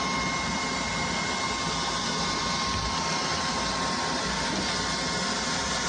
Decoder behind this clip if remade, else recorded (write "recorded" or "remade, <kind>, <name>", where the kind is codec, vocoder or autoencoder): recorded